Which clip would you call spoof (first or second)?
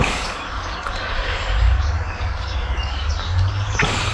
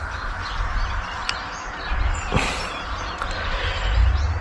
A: first